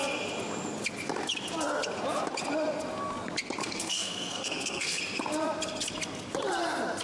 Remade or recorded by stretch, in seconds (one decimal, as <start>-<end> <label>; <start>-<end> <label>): 0.0-3.6 recorded; 3.6-5.0 remade; 5.0-7.0 recorded